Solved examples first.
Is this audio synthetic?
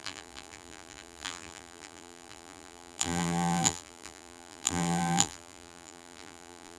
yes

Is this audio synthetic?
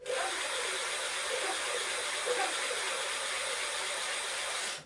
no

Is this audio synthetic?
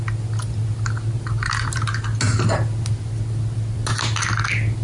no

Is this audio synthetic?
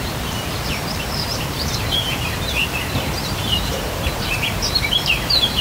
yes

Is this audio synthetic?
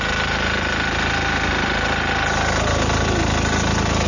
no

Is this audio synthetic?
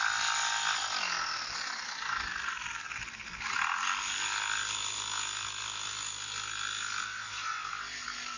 no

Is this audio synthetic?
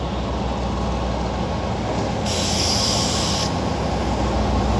no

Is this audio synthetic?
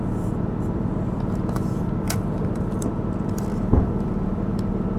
yes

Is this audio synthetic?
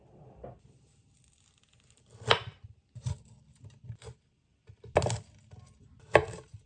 no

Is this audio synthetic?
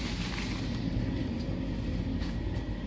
no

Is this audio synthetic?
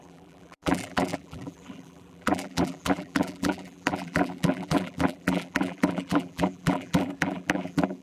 yes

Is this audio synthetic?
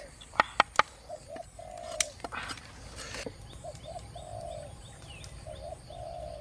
no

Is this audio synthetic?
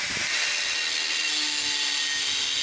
no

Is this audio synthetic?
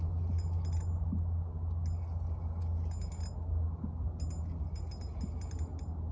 no